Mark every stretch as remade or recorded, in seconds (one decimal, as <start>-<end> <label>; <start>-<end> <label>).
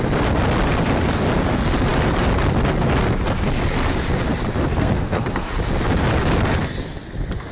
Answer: 0.0-4.7 recorded; 4.7-5.5 remade; 5.5-7.5 recorded